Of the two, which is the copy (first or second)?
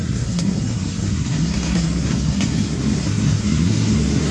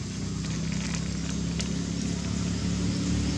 first